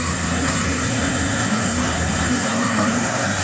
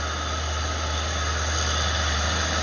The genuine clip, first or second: second